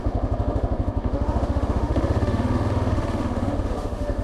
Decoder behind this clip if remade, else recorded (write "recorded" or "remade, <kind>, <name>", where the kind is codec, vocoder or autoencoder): remade, autoencoder, DAC-VAE